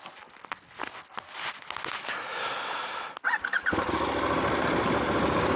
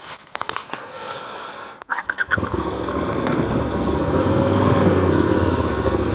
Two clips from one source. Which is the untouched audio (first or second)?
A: first